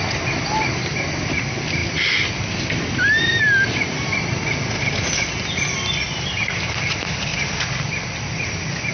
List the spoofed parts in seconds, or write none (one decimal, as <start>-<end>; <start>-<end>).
none